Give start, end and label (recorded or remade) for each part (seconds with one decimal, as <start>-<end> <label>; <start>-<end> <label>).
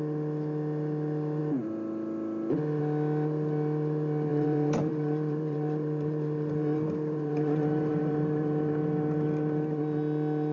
0.0-4.3 recorded; 4.3-8.7 remade; 8.7-10.5 recorded